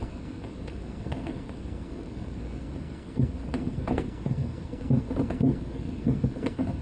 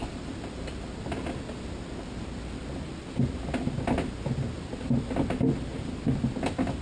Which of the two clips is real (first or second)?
second